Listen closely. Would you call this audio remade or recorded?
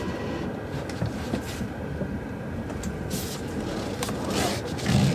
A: recorded